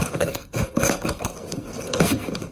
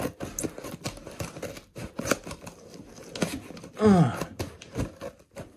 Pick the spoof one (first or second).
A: first